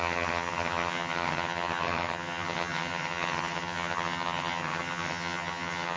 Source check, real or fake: fake